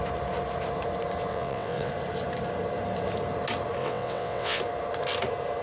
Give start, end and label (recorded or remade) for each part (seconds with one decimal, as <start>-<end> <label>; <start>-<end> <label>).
0.0-1.3 recorded; 1.3-1.9 remade; 1.9-3.8 recorded; 3.8-4.6 remade; 4.6-5.6 recorded